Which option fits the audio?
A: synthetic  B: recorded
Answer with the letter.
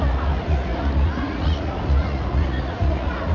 A